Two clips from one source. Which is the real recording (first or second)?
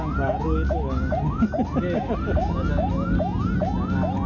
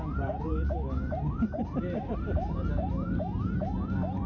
first